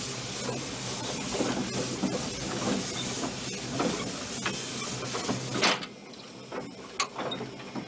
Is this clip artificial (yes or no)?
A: no